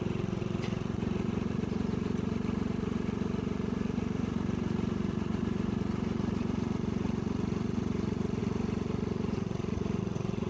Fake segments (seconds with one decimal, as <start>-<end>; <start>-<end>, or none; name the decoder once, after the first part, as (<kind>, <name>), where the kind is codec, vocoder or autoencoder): 0.0-10.5 (vocoder, Vocos)